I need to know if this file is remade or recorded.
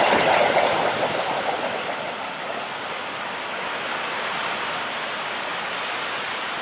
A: recorded